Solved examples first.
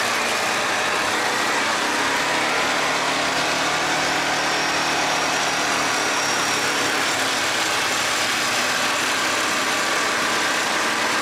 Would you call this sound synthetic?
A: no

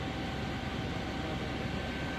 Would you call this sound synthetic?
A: no